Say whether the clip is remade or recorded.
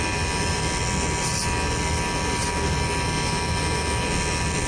recorded